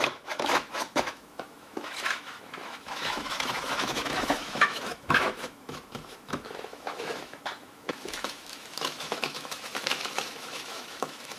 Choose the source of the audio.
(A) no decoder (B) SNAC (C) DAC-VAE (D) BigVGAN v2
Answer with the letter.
C